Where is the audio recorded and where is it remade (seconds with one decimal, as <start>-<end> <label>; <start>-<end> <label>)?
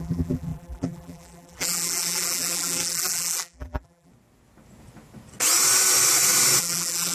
0.0-4.1 remade; 4.1-6.6 recorded; 6.6-7.1 remade